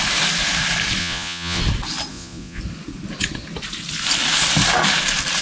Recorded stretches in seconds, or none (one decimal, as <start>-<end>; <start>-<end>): 0.0-1.0; 1.6-2.1; 2.6-5.4